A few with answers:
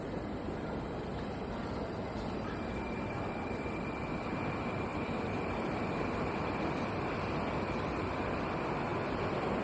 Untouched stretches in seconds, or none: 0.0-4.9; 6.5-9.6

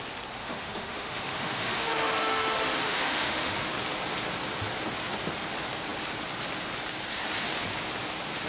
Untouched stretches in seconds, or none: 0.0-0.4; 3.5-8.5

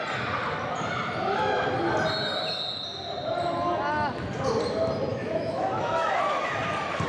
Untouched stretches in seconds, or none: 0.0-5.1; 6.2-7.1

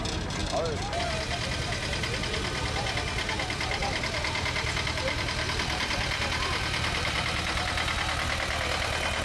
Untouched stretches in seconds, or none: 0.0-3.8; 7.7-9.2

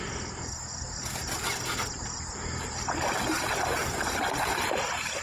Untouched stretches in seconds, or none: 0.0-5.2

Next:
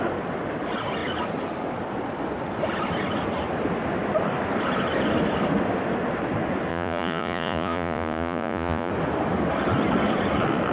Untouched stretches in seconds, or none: 0.0-6.7; 8.9-10.7

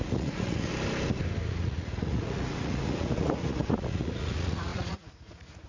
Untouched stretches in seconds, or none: 0.7-1.5

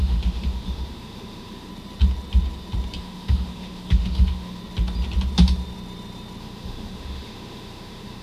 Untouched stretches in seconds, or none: 1.7-3.0; 4.6-6.4